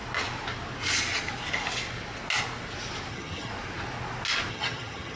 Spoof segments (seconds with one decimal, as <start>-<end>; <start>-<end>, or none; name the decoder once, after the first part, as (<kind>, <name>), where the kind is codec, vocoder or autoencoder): 3.1-3.5 (vocoder, HiFi-GAN); 4.5-5.2